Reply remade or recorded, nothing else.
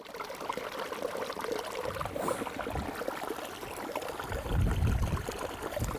recorded